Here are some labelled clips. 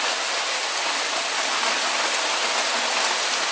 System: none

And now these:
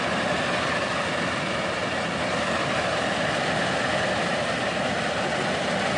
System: none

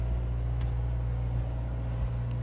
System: none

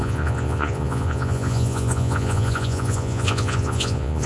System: vocoder, Vocos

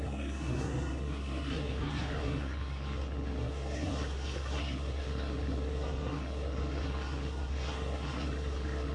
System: codec, SNAC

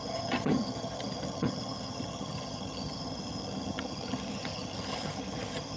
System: vocoder, HiFi-GAN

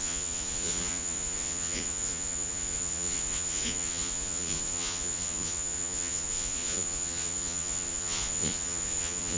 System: vocoder, Vocos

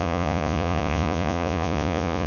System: vocoder, Vocos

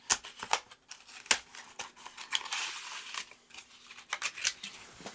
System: none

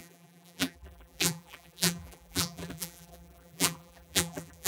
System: vocoder, BigVGAN v2